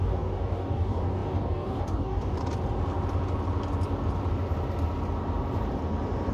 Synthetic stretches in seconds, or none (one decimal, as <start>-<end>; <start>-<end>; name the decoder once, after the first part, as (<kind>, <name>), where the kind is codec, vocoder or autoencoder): 0.0-2.4 (codec, DAC)